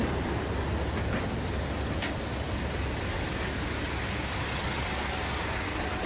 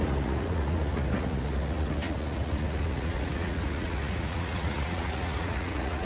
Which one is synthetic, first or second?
second